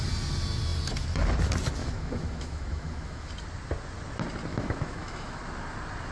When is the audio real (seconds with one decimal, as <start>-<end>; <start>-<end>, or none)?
0.0-1.8; 3.3-4.5; 5.4-6.1